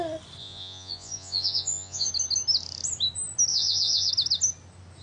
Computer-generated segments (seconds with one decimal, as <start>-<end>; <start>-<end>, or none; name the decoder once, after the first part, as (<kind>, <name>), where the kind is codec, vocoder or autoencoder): 0.4-2.1 (vocoder, Vocos); 3.5-4.1